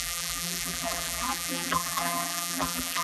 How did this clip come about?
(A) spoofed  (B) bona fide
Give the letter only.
A